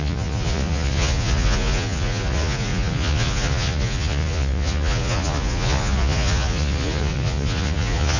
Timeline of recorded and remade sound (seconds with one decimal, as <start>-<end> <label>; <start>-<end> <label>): 0.0-8.2 remade

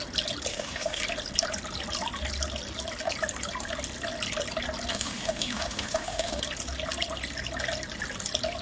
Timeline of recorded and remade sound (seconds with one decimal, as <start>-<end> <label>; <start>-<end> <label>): 0.0-0.5 recorded; 0.5-1.0 remade; 1.0-4.9 recorded; 4.9-6.4 remade; 6.4-8.6 recorded

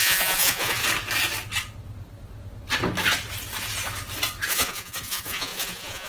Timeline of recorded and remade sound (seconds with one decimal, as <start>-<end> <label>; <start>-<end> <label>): 0.0-0.8 remade; 0.8-4.5 recorded; 4.5-6.1 remade

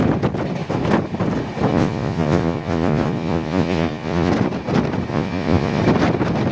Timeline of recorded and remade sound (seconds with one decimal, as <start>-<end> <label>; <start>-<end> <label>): 0.0-1.7 recorded; 1.7-4.3 remade; 4.3-5.1 recorded; 5.1-5.8 remade; 5.8-6.5 recorded

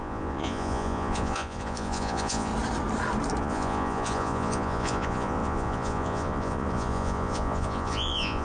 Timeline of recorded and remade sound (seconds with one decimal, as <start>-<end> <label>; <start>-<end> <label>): 0.0-2.5 remade; 2.5-3.4 recorded; 3.4-8.4 remade

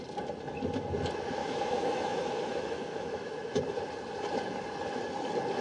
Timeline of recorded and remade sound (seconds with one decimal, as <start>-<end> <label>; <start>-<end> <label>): 0.0-1.4 recorded; 1.4-3.5 remade; 3.5-5.6 recorded

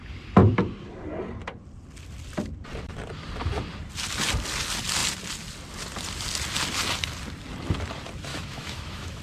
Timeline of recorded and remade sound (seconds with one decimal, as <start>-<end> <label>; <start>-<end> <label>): 0.0-8.3 recorded; 8.3-9.2 remade